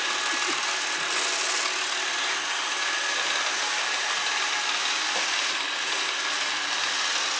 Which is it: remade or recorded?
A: recorded